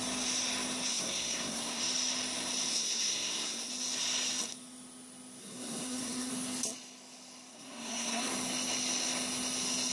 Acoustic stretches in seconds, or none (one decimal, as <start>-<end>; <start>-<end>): 0.0-0.9; 1.8-2.7; 3.7-5.4; 6.3-7.5; 8.3-9.9